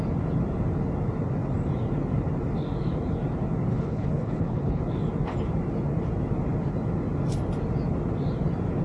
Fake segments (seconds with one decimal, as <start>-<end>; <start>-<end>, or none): 3.7-4.8